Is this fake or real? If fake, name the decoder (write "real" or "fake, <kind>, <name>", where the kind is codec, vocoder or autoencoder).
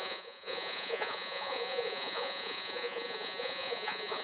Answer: fake, vocoder, Vocos